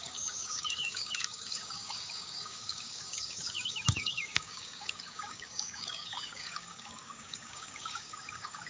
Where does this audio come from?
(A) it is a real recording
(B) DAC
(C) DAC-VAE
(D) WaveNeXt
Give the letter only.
B